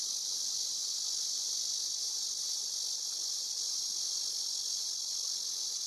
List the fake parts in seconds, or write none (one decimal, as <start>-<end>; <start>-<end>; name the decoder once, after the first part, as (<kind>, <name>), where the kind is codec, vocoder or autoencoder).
none

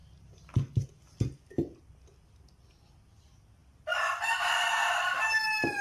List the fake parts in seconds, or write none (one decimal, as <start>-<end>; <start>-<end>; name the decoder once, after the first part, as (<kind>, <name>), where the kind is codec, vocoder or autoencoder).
none